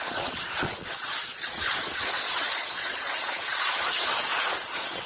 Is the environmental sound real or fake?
fake